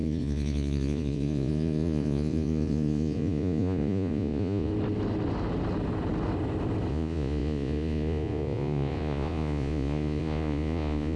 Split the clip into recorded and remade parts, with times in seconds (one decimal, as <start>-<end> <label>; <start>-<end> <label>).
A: 0.0-4.7 remade; 4.7-6.9 recorded; 6.9-11.2 remade